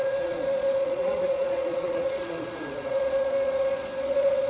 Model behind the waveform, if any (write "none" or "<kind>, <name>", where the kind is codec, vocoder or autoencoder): vocoder, Vocos